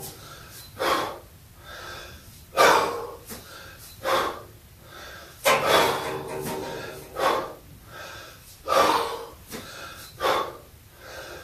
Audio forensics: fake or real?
real